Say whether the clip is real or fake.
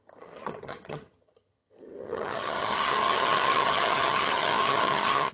fake